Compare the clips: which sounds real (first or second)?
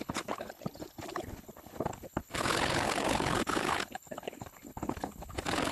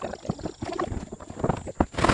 second